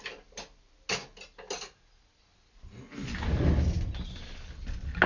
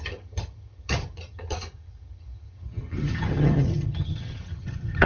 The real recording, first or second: first